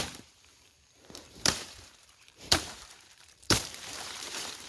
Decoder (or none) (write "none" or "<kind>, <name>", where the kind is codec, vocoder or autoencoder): vocoder, BigVGAN v2